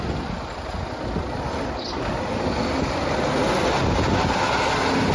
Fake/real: real